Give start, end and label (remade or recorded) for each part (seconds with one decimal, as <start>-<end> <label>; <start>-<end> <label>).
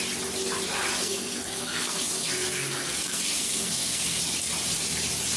0.0-1.0 recorded; 1.0-4.2 remade; 4.2-5.4 recorded